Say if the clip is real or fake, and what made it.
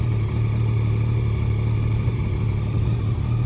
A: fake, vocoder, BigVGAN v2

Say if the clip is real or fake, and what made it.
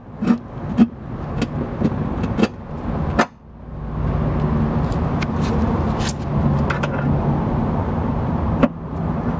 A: real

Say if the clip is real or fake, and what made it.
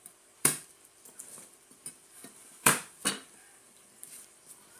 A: fake, vocoder, BigVGAN v2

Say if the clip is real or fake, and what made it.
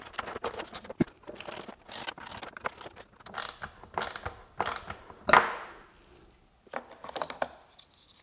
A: real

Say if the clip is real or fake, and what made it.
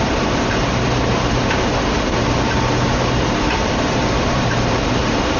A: fake, vocoder, BigVGAN v2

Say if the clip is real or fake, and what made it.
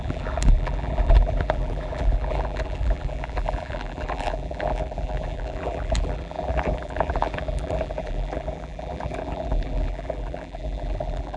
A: fake, vocoder, BigVGAN v2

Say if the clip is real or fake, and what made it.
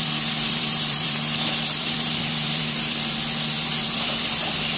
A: fake, vocoder, BigVGAN v2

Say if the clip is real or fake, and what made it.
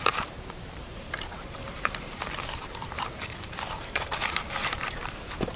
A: fake, vocoder, BigVGAN v2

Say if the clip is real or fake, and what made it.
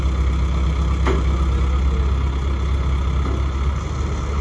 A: real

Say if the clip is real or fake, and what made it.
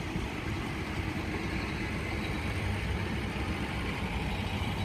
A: fake, vocoder, BigVGAN v2